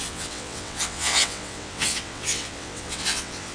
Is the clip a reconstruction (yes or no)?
yes